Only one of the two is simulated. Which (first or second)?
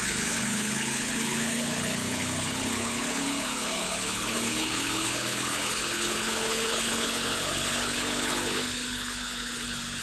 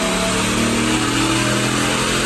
first